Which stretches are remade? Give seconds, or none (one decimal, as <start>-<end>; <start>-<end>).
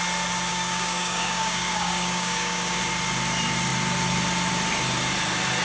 0.5-2.8